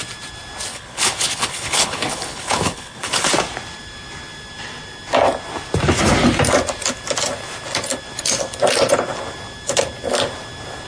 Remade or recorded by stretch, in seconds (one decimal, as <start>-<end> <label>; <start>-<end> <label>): 0.0-0.7 recorded; 0.7-3.3 remade; 3.3-10.9 recorded